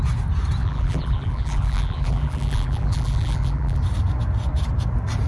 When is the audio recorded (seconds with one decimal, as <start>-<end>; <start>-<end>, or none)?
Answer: 0.0-0.6; 3.8-5.3

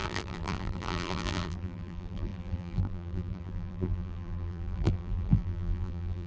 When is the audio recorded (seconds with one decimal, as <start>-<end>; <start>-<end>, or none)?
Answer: none

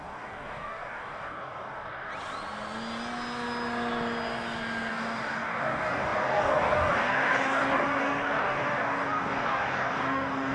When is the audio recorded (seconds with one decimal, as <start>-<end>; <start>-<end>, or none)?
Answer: 2.1-4.9

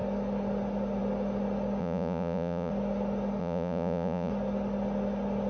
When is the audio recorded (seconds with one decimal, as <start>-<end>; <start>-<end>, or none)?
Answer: 0.0-1.8; 2.7-3.4; 4.3-5.5

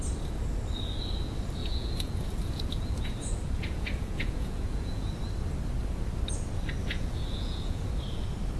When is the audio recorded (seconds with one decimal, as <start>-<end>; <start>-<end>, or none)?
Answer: 0.0-1.6; 5.1-6.8; 7.9-8.6

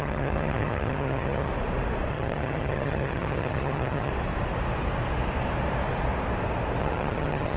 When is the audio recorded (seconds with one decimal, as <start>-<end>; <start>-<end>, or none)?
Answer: 1.5-2.1; 4.1-6.8

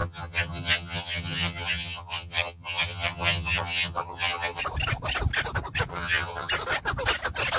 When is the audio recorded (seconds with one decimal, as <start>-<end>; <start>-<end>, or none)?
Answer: 4.6-5.9; 6.5-7.6